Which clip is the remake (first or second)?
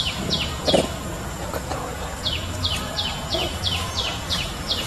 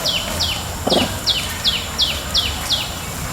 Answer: first